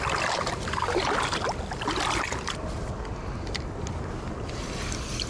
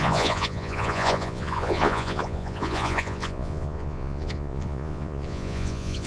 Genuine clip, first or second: first